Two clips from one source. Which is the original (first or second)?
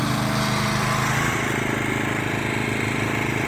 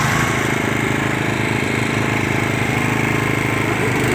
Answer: first